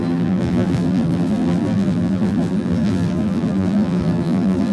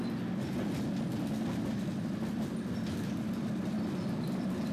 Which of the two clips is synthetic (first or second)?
first